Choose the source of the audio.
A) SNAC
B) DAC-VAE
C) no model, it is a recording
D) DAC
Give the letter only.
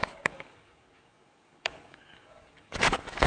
D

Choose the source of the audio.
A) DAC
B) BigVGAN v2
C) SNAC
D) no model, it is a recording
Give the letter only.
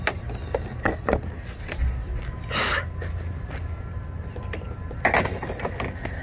D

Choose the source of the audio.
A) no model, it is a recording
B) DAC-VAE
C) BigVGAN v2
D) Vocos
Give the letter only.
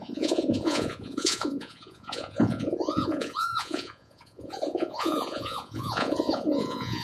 D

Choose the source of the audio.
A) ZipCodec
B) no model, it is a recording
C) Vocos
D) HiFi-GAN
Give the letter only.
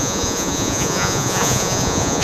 C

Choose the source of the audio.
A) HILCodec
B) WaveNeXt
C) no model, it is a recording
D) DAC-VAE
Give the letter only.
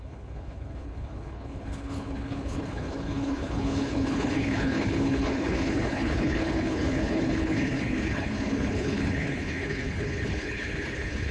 A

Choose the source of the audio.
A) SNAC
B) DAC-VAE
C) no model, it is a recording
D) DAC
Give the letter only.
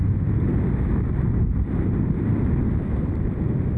C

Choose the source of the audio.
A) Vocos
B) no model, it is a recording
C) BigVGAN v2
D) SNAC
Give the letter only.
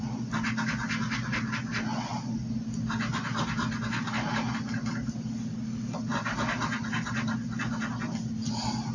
B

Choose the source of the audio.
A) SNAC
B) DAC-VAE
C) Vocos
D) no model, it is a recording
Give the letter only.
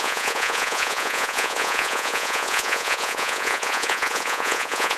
C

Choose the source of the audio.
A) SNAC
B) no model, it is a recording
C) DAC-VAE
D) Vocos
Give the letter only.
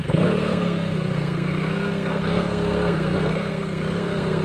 A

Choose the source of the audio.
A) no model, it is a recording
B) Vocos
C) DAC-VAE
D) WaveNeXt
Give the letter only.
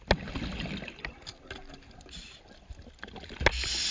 A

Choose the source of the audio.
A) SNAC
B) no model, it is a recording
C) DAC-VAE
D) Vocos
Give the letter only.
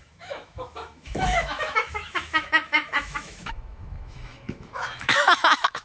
C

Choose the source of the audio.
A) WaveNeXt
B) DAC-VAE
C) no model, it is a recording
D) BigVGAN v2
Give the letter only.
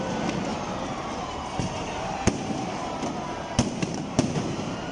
D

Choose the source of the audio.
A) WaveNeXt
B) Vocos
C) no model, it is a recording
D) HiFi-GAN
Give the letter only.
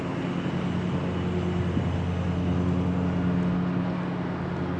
C